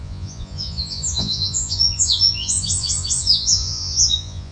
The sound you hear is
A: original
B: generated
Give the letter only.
B